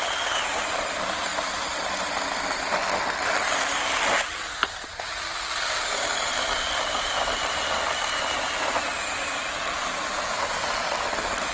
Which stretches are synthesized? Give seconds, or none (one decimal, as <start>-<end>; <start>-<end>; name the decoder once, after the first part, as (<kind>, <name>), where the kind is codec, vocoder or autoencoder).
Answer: none